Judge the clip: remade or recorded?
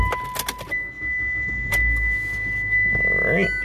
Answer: recorded